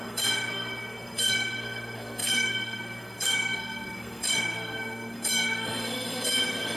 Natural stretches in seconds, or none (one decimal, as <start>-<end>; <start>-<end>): none

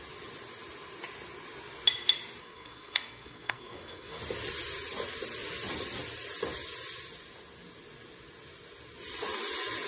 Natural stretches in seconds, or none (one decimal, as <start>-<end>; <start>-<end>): 0.0-2.4; 4.2-9.9

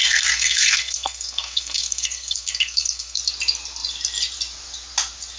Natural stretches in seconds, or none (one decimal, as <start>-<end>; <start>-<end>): 3.2-5.4

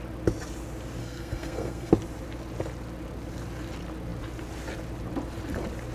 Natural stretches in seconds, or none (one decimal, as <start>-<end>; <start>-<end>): 0.0-1.0; 1.9-5.9

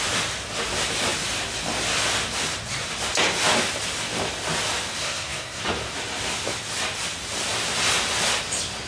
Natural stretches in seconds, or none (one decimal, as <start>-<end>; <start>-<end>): 0.0-5.0; 5.6-8.9